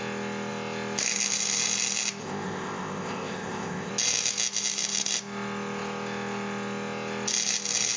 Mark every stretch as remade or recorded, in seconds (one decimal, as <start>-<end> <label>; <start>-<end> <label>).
0.0-2.2 recorded; 2.2-3.9 remade; 3.9-8.0 recorded